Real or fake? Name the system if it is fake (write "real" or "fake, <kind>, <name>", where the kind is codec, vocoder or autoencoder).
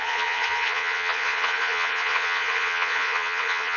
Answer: fake, vocoder, Vocos